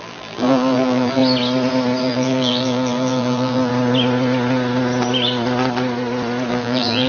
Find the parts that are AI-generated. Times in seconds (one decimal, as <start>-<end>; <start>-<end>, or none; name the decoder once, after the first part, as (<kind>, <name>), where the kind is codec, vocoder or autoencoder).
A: 0.0-1.2 (vocoder, BigVGAN v2); 2.0-3.7; 6.5-7.1